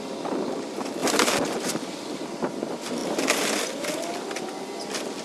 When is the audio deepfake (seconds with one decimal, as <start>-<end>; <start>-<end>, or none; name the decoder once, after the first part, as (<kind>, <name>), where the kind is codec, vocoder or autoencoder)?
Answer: 1.0-2.5 (vocoder, BigVGAN v2)